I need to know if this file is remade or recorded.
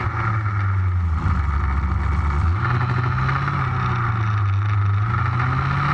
recorded